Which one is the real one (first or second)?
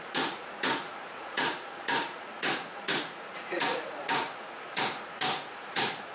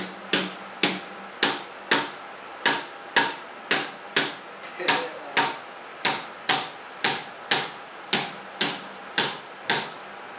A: second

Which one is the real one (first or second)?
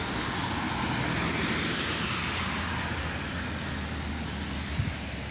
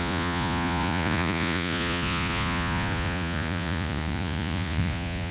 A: first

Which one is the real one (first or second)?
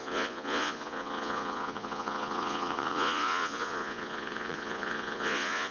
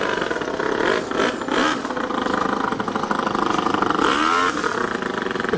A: second